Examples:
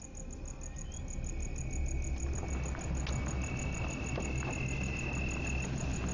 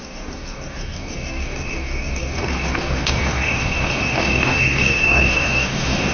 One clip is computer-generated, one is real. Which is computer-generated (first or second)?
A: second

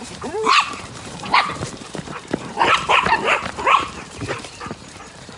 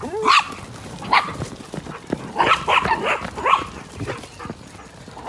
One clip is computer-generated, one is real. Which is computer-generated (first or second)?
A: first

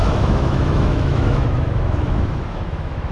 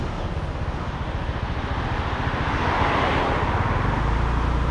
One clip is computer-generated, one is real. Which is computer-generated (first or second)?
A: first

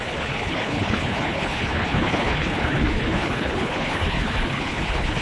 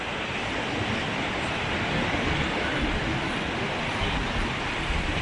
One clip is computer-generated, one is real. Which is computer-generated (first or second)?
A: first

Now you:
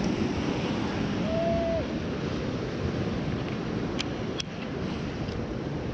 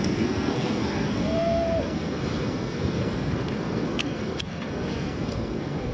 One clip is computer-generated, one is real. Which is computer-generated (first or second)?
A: second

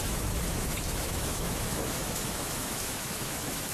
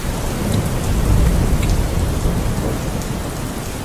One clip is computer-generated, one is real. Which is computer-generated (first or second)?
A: first